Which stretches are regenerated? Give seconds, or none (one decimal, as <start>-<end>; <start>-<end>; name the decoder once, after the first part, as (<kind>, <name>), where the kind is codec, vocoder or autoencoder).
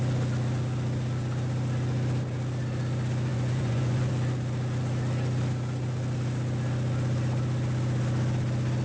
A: 3.3-4.1 (vocoder, Vocos)